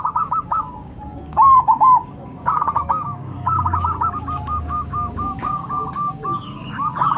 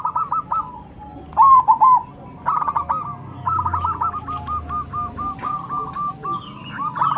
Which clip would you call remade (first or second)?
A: first